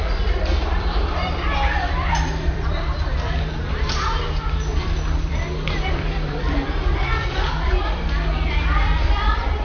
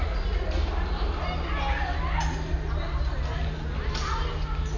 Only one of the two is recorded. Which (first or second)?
second